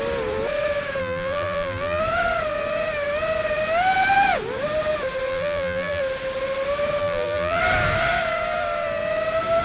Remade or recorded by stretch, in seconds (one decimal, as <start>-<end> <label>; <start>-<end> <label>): 0.0-1.0 recorded; 1.0-2.0 remade; 2.0-5.3 recorded; 5.3-6.0 remade; 6.0-7.0 recorded; 7.0-7.6 remade; 7.6-9.6 recorded